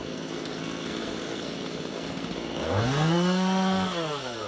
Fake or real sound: fake